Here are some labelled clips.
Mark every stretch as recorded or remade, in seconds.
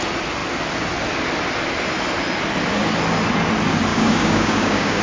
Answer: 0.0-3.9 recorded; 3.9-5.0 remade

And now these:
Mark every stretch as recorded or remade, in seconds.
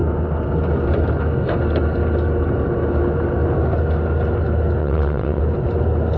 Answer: 0.0-4.8 recorded; 4.8-5.4 remade; 5.4-6.2 recorded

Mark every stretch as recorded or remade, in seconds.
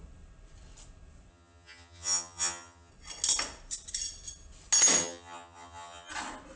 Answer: 0.0-1.3 recorded; 1.3-2.9 remade; 2.9-5.0 recorded; 5.0-6.1 remade; 6.1-6.6 recorded